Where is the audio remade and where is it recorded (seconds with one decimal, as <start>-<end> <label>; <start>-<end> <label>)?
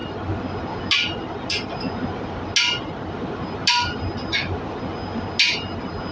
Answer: 0.0-6.1 recorded